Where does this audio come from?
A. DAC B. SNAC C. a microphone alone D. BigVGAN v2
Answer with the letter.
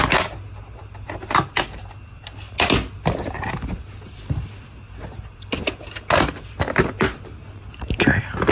C